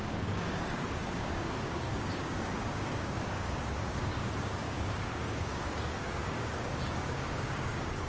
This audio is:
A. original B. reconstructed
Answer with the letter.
B